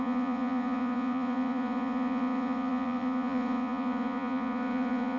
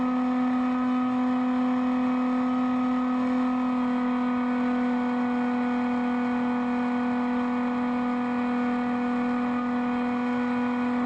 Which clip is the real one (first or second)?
second